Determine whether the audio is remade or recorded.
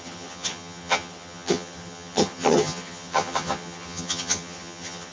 remade